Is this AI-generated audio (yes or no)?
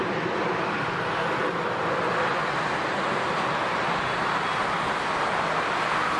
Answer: no